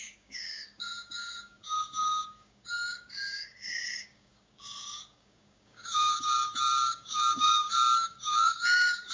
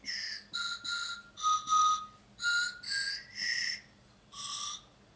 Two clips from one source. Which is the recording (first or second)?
second